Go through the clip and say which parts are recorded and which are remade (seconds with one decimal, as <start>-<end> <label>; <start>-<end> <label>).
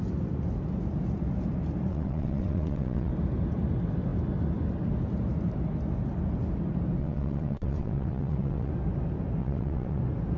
0.0-1.9 recorded; 1.9-3.1 remade; 3.1-7.0 recorded; 7.0-8.7 remade; 8.7-9.4 recorded; 9.4-10.0 remade; 10.0-10.4 recorded